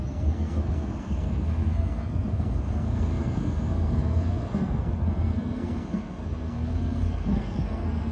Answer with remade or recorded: remade